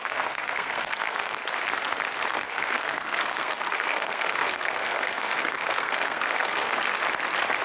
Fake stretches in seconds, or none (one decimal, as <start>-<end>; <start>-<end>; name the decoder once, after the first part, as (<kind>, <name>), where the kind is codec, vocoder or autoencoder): 0.0-1.4 (codec, SNAC); 2.3-7.0